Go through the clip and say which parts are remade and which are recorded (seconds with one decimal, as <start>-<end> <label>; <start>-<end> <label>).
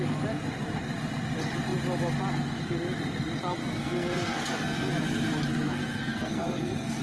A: 0.0-3.6 recorded; 3.6-4.9 remade; 4.9-5.5 recorded; 5.5-7.0 remade